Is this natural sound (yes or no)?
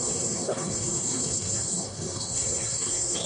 no